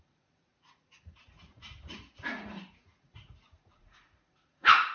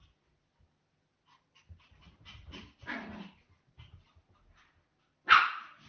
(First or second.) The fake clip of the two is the first